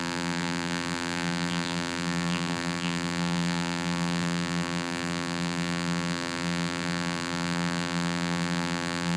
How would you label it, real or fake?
fake